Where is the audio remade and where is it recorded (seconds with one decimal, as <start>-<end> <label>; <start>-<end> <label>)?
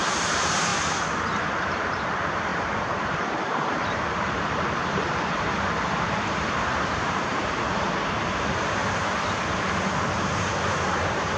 0.0-0.7 remade; 0.7-1.6 recorded; 1.6-8.8 remade; 8.8-10.2 recorded; 10.2-11.4 remade